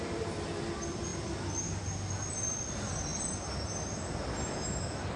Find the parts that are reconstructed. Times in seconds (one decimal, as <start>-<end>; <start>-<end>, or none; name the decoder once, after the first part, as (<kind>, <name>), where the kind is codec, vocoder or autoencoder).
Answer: none